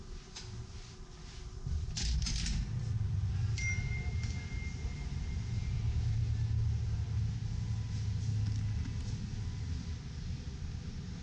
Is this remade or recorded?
recorded